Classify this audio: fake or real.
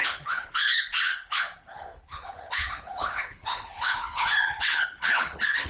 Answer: fake